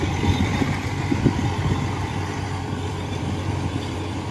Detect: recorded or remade remade